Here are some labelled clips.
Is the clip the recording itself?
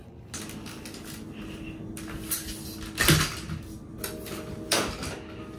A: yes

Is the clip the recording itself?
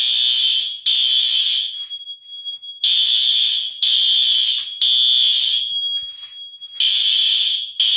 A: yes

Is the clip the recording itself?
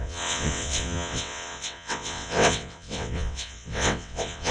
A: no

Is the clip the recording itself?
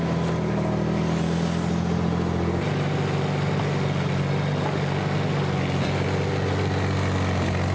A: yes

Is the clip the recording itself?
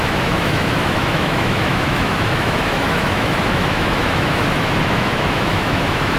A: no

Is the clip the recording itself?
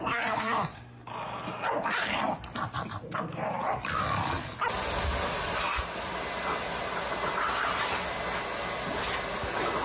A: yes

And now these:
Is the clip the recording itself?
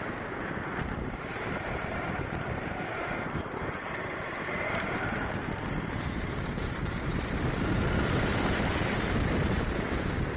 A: no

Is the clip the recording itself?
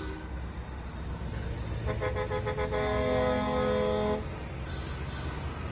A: yes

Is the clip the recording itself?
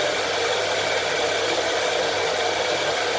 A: yes